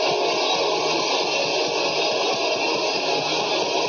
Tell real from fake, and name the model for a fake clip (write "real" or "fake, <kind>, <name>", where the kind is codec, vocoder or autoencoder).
real